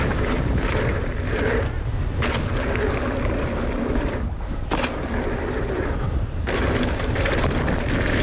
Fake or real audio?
real